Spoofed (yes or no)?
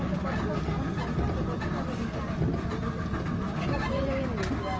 no